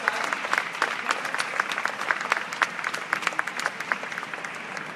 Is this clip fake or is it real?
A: real